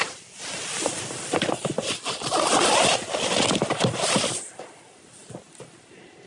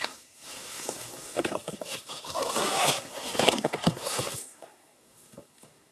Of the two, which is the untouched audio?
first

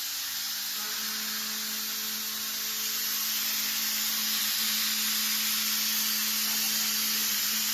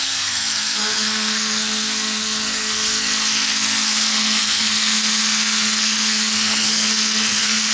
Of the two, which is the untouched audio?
first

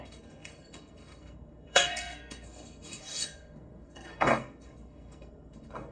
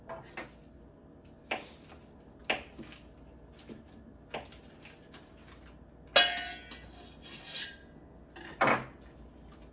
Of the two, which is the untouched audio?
second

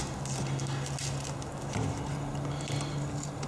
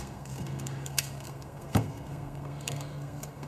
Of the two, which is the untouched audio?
first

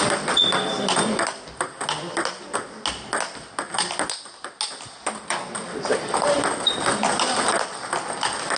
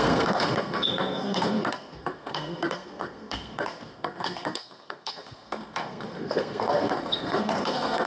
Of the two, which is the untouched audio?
first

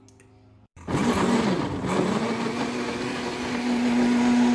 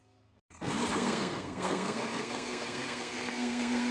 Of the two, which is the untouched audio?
first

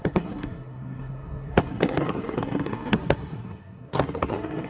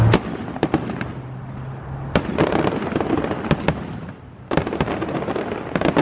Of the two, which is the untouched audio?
second